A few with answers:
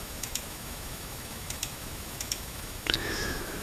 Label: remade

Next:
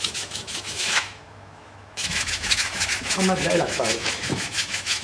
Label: remade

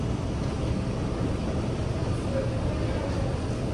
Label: recorded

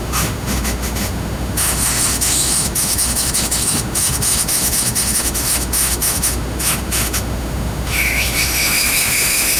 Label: remade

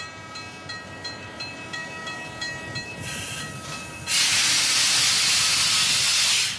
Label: recorded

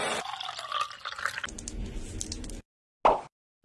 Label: recorded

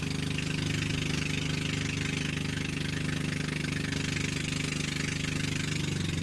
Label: recorded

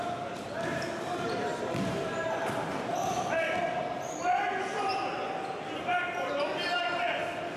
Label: recorded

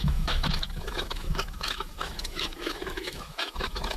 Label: remade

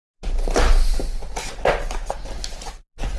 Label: recorded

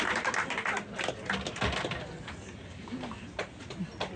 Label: recorded